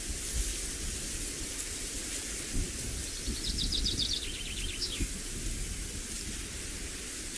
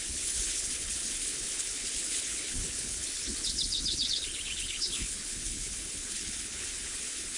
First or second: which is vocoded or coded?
second